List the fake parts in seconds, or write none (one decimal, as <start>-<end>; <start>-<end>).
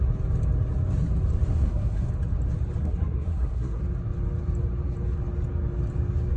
1.5-2.1; 2.8-3.8